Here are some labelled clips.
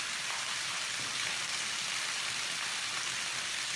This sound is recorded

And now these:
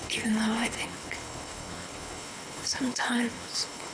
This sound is remade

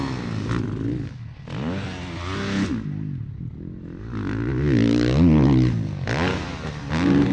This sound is recorded